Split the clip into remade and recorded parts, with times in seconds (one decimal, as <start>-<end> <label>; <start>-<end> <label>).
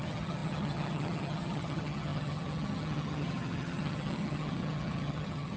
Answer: 0.0-5.6 remade